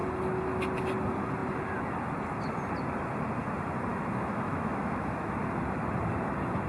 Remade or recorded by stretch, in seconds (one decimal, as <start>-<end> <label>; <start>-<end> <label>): 0.0-3.9 recorded; 3.9-5.4 remade; 5.4-6.7 recorded